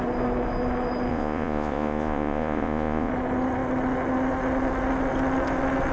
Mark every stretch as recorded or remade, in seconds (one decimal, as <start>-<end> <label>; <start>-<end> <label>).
0.0-1.1 recorded; 1.1-3.1 remade; 3.1-5.9 recorded